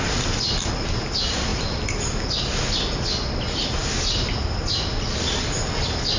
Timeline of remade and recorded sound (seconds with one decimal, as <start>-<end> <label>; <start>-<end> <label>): 0.0-1.5 recorded; 1.5-2.6 remade; 2.6-6.2 recorded